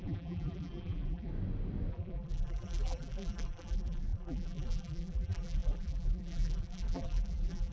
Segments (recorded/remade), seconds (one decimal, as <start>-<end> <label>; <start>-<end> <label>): 0.0-1.3 remade; 1.3-1.9 recorded; 1.9-7.7 remade